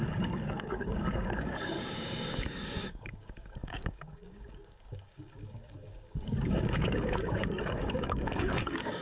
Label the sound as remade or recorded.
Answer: remade